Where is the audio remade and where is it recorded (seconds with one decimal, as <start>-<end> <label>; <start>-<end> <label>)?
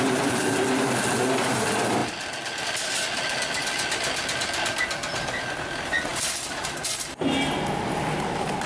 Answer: 0.0-8.7 recorded